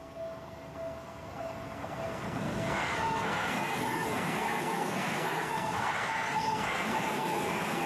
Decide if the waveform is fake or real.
fake